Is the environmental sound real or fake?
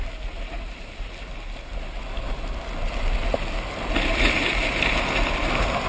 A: real